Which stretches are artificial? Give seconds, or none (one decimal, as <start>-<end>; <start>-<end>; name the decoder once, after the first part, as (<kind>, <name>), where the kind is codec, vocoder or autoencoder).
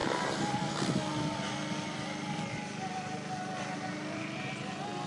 none